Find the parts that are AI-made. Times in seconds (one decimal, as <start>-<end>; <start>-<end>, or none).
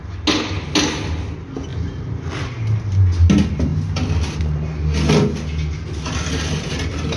none